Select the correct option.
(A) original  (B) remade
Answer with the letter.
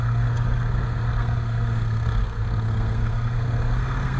B